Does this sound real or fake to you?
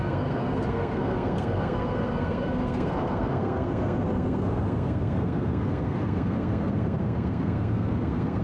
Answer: fake